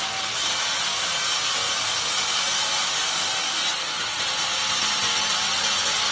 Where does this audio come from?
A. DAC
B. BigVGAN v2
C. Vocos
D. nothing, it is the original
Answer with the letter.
D